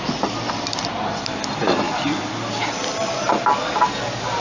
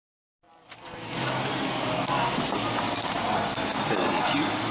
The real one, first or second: second